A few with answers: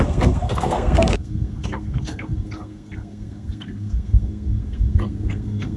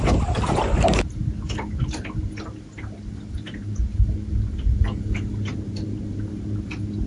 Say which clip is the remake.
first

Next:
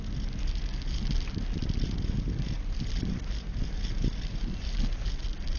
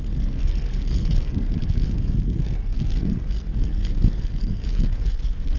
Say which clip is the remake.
second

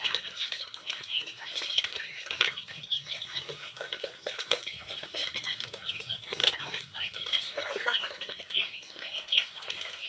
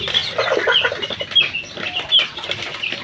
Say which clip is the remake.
first